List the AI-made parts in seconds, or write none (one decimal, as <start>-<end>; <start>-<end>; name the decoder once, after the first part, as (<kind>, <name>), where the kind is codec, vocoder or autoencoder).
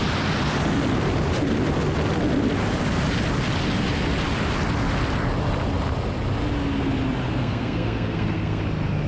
7.4-8.6 (codec, SNAC)